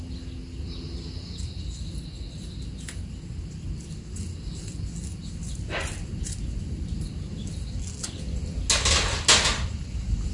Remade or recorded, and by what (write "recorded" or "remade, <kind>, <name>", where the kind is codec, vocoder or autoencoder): recorded